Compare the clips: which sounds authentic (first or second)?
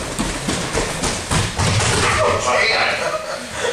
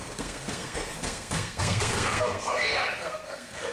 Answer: first